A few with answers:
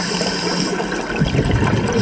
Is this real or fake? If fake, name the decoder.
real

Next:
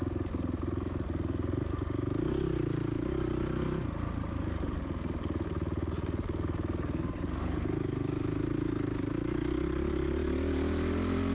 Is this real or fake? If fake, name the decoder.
real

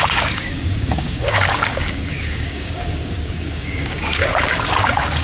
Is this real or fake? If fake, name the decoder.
fake, codec, DAC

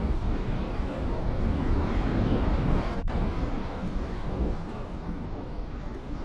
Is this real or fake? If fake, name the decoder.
fake, codec, DAC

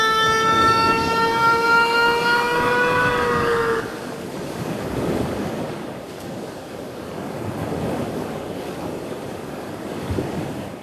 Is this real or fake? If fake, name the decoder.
fake, codec, DAC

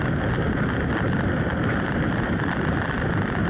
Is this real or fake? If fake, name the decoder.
real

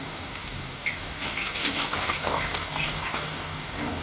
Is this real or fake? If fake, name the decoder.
fake, codec, DAC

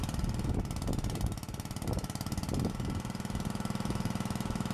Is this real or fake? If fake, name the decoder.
real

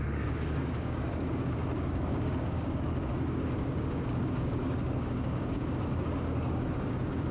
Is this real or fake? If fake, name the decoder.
fake, codec, DAC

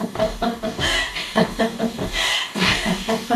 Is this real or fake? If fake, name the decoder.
fake, codec, DAC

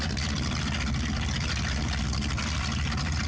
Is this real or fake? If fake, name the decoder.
real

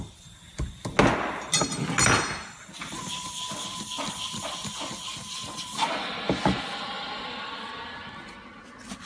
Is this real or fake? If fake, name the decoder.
real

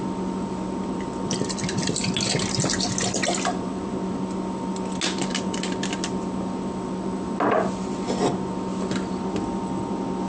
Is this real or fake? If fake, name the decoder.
real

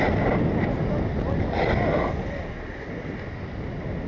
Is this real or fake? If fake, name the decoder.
real